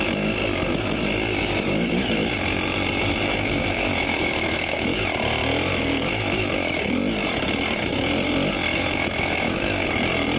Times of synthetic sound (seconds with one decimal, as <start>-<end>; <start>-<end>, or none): 3.3-5.0; 5.7-6.5; 8.7-9.9